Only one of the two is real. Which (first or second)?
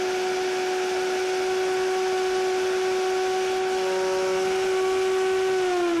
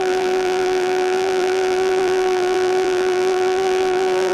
first